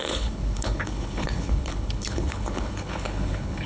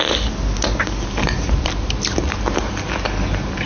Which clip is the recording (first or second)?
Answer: second